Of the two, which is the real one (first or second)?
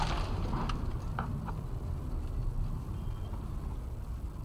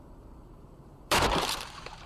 first